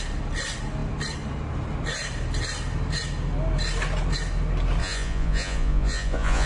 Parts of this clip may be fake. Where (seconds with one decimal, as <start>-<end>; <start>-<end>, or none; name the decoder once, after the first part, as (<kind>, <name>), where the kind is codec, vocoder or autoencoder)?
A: 4.8-6.5 (vocoder, Vocos)